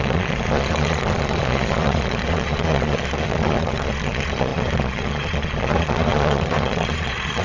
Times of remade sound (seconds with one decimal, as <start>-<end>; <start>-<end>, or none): 0.0-7.4